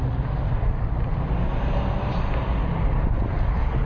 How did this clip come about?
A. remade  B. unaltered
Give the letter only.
B